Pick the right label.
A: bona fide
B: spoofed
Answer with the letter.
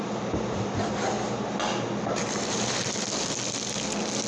A